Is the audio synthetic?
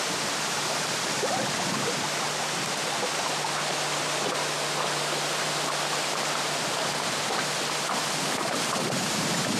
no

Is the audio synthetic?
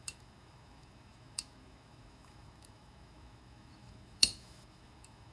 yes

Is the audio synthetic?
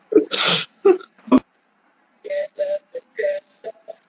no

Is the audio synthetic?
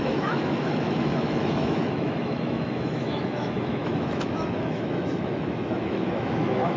yes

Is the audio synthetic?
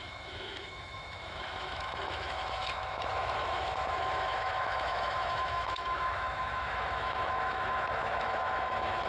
yes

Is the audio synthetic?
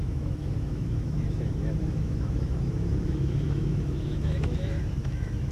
yes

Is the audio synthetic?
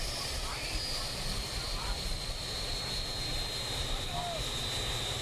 no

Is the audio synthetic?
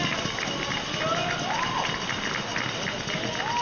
no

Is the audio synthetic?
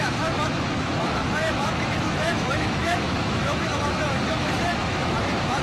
yes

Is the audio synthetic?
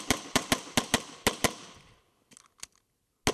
no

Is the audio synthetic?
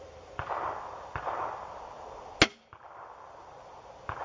no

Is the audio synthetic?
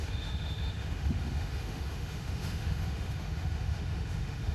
yes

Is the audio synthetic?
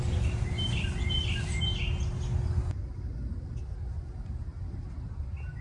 no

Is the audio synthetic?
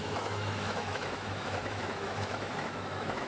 yes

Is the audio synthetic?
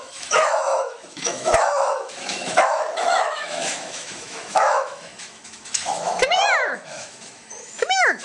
yes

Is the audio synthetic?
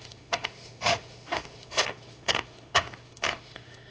yes